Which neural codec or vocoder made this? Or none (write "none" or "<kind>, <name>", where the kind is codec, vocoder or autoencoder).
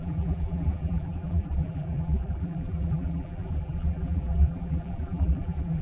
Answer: vocoder, BigVGAN v2